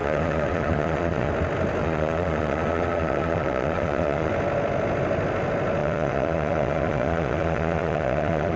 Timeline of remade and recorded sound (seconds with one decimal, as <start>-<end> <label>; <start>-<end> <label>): 0.0-1.3 remade; 1.3-1.8 recorded; 1.8-4.3 remade; 4.3-5.8 recorded; 5.8-8.6 remade